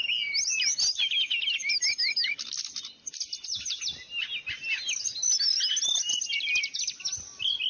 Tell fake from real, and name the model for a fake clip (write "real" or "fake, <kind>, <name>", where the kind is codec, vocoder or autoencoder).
real